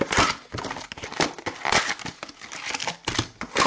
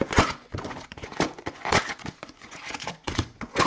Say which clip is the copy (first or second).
second